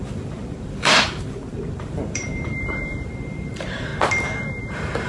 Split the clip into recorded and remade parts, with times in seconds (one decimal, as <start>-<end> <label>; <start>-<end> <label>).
0.0-3.9 remade; 3.9-4.6 recorded; 4.6-5.1 remade